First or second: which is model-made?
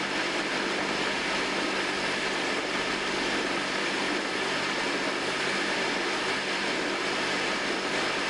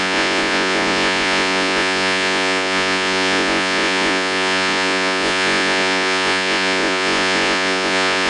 second